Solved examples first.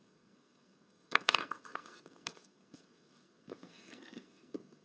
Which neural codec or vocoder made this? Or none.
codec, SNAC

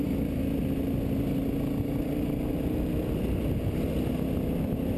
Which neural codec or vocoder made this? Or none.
none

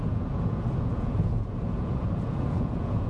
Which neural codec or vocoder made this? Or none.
vocoder, Vocos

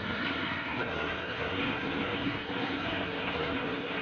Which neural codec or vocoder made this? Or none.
codec, SNAC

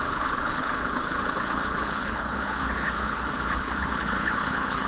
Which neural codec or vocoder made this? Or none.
codec, HILCodec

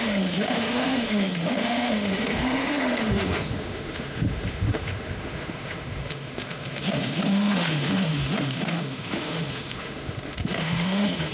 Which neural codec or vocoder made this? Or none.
autoencoder, DAC-VAE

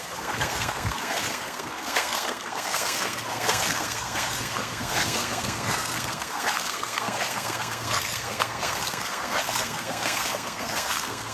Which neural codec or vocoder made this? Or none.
codec, SNAC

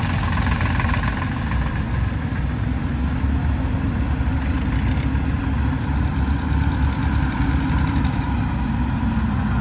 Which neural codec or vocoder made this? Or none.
none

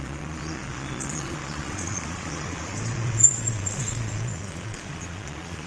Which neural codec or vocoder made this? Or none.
vocoder, Vocos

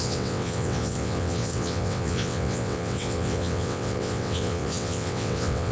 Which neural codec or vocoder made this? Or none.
vocoder, WaveNeXt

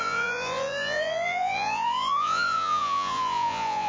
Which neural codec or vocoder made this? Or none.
vocoder, Vocos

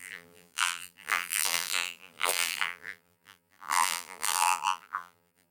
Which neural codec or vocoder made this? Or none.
vocoder, BigVGAN v2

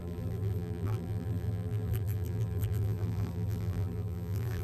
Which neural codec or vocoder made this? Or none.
vocoder, BigVGAN v2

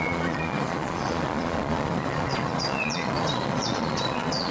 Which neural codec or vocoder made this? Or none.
vocoder, Vocos